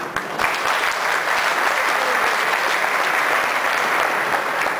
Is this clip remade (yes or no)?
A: no